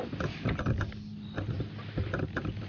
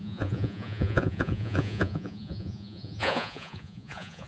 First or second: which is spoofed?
second